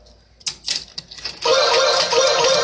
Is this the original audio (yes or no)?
yes